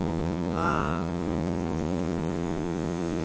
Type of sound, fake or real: fake